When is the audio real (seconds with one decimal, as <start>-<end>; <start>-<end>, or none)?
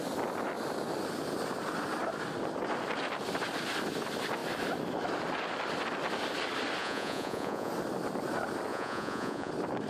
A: 0.0-6.8; 7.7-8.7; 9.5-9.9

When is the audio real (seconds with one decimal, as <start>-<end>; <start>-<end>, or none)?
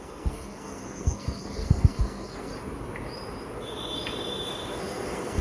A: 2.5-4.8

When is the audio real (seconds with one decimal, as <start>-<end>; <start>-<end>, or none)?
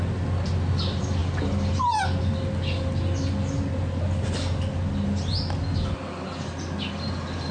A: 0.0-7.5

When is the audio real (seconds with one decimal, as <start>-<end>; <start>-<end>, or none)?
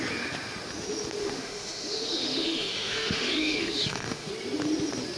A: 0.0-1.2; 4.3-5.2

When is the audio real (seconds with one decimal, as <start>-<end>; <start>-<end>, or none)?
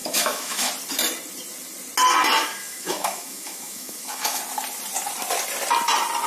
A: 0.7-2.4; 4.4-6.3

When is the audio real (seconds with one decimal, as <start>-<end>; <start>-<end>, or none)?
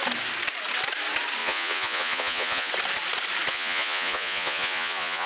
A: 0.0-1.4; 2.7-3.5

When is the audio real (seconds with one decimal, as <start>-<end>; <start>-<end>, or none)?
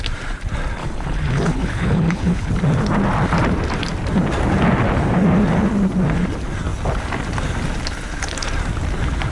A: 0.0-0.8; 2.5-9.3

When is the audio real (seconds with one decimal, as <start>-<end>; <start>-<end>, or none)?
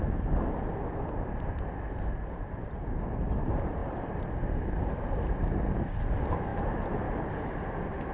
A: 0.0-2.1; 3.0-3.8; 4.3-8.1